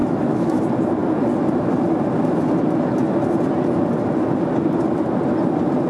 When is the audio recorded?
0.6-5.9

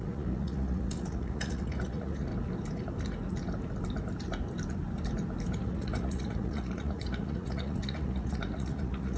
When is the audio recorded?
2.3-5.6